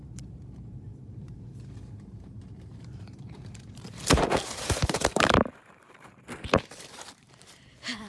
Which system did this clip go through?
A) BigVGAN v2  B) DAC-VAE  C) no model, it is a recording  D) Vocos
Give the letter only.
A